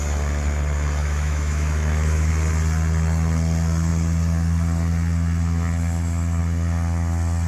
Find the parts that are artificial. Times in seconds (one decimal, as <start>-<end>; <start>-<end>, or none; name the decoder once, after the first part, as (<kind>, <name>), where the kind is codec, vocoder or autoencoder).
1.0-2.3 (autoencoder, DAC-VAE)